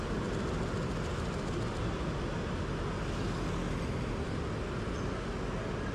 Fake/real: real